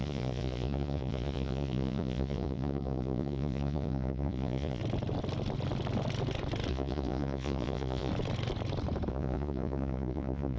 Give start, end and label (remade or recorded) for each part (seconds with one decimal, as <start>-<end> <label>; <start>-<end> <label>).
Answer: 0.0-4.8 remade; 4.8-6.7 recorded; 6.7-8.1 remade; 8.1-9.1 recorded; 9.1-10.6 remade